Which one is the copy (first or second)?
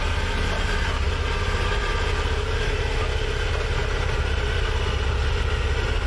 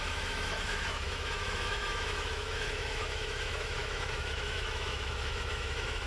second